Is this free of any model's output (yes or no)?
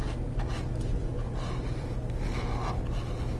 yes